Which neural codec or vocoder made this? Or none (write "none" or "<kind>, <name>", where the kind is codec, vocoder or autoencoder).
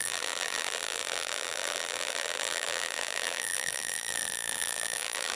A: vocoder, BigVGAN v2